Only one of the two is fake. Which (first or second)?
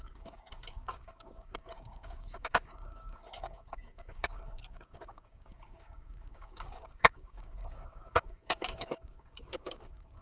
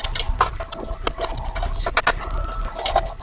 first